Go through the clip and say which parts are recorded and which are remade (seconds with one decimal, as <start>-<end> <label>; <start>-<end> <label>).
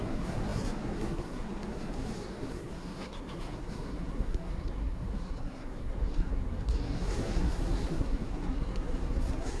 0.0-9.6 remade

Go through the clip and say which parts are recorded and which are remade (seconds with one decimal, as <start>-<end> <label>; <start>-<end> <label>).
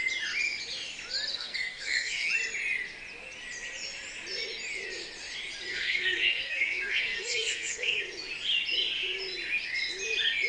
0.0-1.3 recorded; 1.3-2.3 remade; 2.3-5.7 recorded; 5.7-8.0 remade; 8.0-10.5 recorded